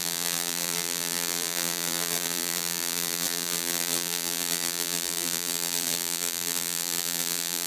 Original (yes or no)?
no